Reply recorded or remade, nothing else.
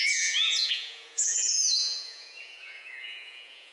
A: remade